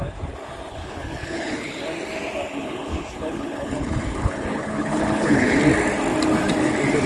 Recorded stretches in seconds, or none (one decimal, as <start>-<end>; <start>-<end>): 0.0-0.7; 1.8-2.6; 5.6-7.1